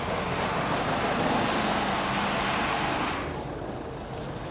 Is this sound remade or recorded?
recorded